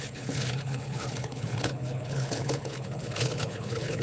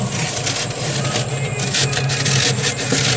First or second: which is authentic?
second